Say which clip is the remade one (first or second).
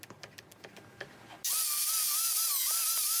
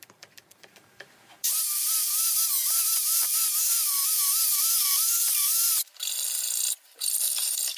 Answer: second